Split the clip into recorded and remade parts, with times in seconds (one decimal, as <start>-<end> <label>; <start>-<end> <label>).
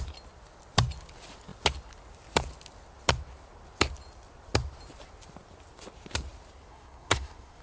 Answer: 0.0-6.7 recorded; 6.7-7.6 remade